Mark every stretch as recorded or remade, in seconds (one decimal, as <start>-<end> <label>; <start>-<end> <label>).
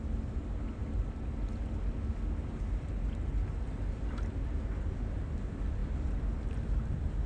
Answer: 0.0-7.3 recorded